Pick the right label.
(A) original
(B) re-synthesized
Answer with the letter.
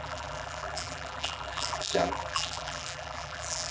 B